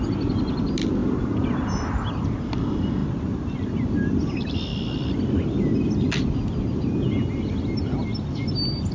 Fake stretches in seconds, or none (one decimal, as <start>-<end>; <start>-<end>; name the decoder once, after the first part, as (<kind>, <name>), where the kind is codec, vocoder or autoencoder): 1.0-2.4 (vocoder, BigVGAN v2); 4.7-5.9